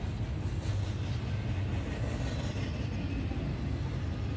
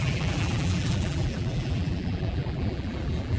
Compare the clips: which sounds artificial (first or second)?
second